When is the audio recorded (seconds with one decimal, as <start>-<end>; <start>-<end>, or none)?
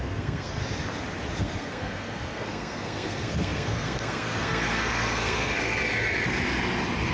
0.6-1.4; 5.9-7.1